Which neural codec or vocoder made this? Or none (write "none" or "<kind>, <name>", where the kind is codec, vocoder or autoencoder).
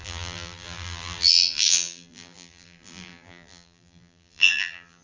vocoder, BigVGAN v2